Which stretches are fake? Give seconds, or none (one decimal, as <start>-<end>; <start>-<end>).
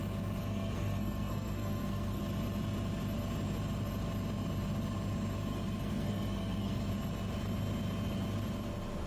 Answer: 0.4-2.2; 5.5-6.9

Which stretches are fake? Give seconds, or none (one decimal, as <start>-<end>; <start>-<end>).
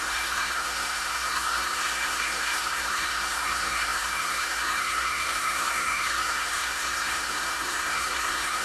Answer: 0.0-8.6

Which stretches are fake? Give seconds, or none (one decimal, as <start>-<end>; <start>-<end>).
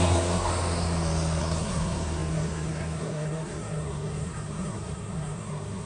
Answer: 0.0-0.5; 1.4-5.8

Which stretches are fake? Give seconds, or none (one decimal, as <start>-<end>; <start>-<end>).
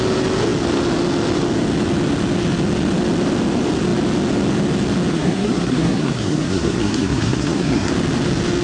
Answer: 5.1-7.9